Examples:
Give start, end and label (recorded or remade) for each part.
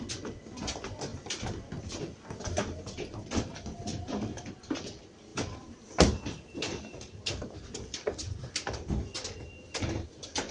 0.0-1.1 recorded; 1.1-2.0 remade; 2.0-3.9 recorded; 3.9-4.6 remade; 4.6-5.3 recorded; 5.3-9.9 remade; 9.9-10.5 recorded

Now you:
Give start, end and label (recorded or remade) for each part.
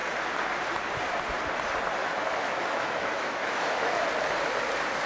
0.0-2.0 recorded; 2.0-4.0 remade; 4.0-5.1 recorded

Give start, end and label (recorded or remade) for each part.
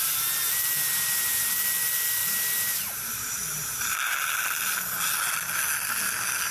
0.0-6.5 recorded